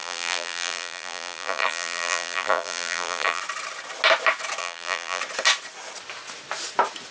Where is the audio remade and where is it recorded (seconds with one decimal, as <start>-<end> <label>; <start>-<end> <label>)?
0.0-3.4 remade; 3.4-4.6 recorded; 4.6-5.2 remade; 5.2-7.1 recorded